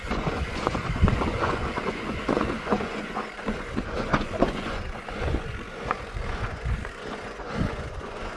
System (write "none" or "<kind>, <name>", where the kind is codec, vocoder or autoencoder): vocoder, Vocos